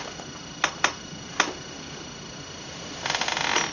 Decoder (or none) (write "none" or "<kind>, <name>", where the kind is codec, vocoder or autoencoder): none